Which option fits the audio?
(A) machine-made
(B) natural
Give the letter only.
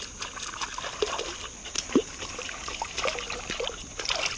B